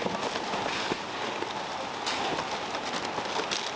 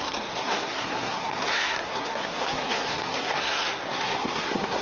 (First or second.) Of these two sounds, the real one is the first